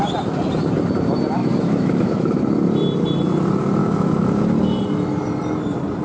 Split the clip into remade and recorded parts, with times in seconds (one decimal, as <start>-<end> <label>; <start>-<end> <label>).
0.0-1.4 recorded; 1.4-2.4 remade; 2.4-3.8 recorded; 3.8-4.4 remade; 4.4-6.0 recorded